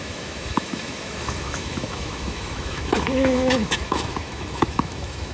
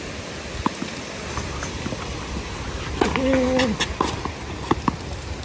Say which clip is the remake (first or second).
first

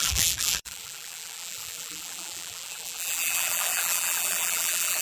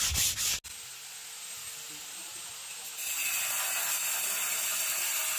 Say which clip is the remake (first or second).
first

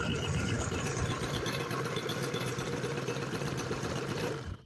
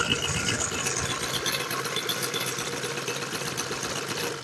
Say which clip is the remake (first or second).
first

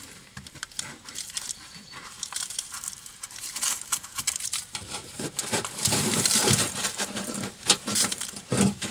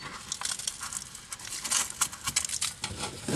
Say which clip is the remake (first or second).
first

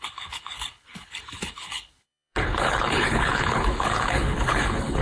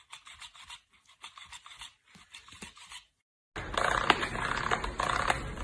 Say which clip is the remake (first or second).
first